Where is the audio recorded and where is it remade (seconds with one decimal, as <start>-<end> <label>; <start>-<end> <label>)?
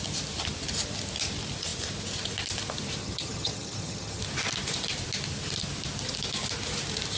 0.0-3.0 recorded; 3.0-4.2 remade; 4.2-7.2 recorded